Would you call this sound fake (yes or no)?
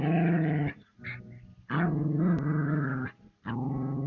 no